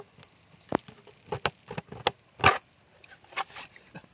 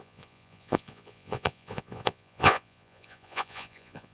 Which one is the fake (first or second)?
second